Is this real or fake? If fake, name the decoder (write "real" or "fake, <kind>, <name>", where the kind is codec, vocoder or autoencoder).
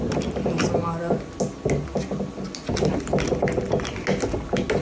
real